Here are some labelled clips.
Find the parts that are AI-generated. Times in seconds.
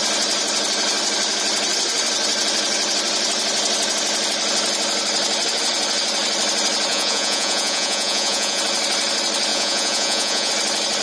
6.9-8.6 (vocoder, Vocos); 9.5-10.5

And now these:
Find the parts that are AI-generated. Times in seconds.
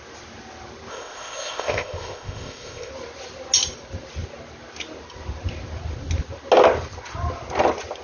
0.9-2.9 (codec, ZipCodec)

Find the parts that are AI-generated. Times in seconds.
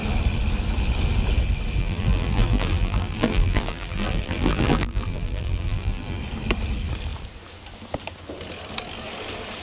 1.8-6.2 (vocoder, BigVGAN v2)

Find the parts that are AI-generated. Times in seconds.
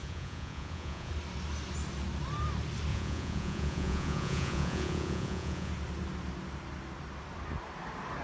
0.0-1.1 (vocoder, Vocos); 2.9-5.7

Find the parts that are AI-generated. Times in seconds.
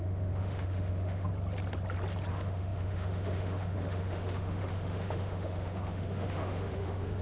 0.0-1.3 (autoencoder, DAC-VAE); 2.3-7.2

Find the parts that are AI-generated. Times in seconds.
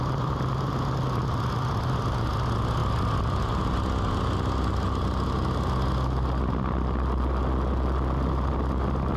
none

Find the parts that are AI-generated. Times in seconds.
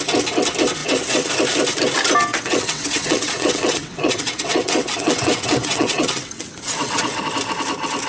0.8-1.3 (vocoder, WaveNeXt); 2.3-7.2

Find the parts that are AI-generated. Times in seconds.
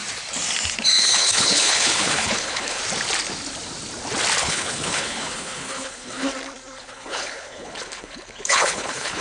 1.0-2.8 (codec, HILCodec); 4.4-6.3; 6.8-9.2